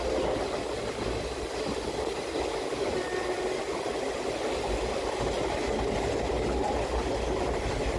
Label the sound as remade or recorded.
recorded